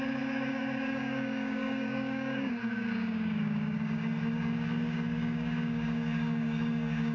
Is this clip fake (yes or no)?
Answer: yes